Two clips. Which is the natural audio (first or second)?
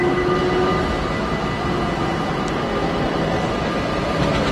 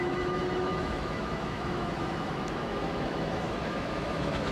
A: first